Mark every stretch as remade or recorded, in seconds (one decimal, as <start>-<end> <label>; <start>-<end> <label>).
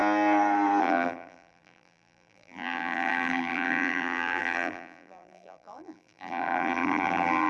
0.0-0.8 recorded; 0.8-7.5 remade